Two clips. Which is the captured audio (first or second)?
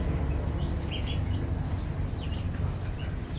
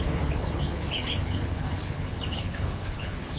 first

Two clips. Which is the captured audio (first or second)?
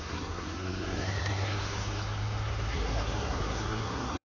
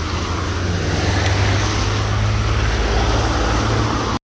second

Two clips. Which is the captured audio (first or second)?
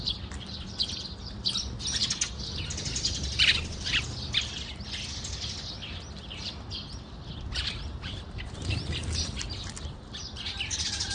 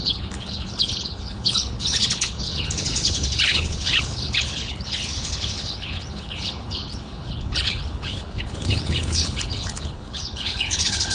first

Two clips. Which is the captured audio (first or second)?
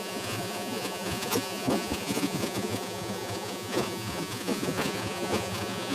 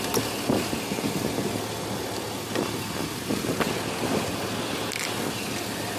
second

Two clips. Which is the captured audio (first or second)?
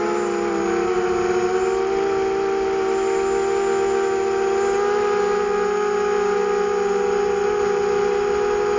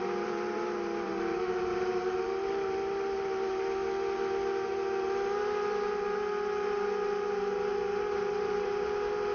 first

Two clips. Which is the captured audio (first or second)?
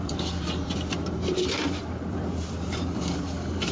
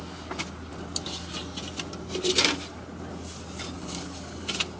second